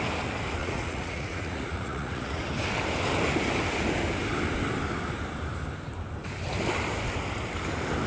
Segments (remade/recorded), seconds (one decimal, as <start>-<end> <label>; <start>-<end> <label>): 0.0-0.6 recorded; 0.6-2.4 remade; 2.4-8.1 recorded